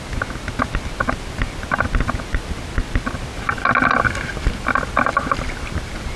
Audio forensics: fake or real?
real